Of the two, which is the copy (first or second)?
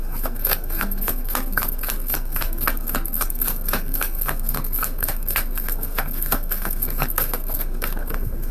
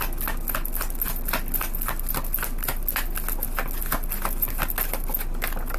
first